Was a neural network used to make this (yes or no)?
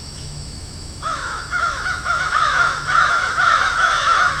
yes